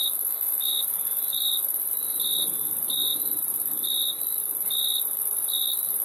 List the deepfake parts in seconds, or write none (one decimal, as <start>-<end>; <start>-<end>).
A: 0.0-0.8

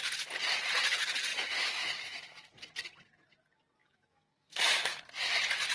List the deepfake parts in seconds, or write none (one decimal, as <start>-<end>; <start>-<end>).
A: 1.3-2.5; 3.8-5.0

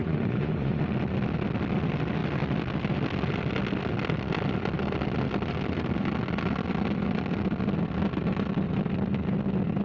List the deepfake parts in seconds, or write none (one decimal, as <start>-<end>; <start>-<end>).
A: 0.0-0.8